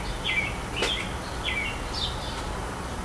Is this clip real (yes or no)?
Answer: yes